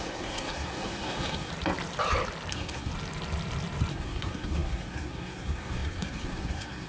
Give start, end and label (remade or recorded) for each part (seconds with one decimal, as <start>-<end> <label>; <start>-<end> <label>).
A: 0.0-1.5 remade; 1.5-2.5 recorded; 2.5-2.9 remade; 2.9-3.9 recorded; 3.9-6.9 remade